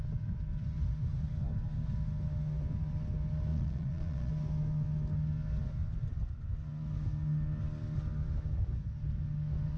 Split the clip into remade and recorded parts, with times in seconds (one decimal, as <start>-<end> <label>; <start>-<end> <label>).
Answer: 0.0-3.5 recorded; 3.5-4.3 remade; 4.3-9.8 recorded